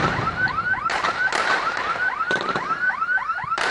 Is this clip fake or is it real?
fake